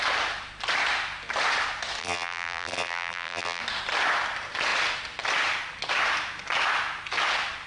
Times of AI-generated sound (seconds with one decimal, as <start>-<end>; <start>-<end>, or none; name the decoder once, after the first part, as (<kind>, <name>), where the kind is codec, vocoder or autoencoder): 2.0-3.6 (vocoder, BigVGAN v2)